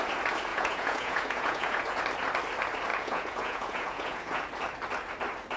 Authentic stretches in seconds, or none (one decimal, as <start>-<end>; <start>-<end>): 0.0-0.5; 2.0-2.9; 4.5-5.6